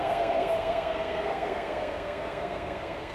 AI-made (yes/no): yes